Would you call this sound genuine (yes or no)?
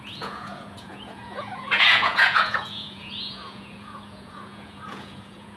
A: no